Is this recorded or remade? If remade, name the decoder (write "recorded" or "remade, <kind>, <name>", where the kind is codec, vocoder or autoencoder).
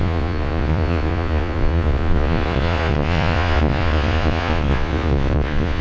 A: remade, vocoder, Vocos